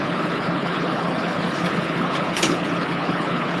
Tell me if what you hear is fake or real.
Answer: fake